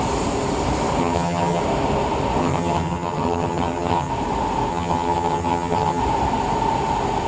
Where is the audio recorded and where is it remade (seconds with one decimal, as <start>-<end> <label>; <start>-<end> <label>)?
0.0-1.0 recorded; 1.0-1.6 remade; 1.6-2.4 recorded; 2.4-4.1 remade; 4.1-4.7 recorded; 4.7-6.0 remade; 6.0-7.3 recorded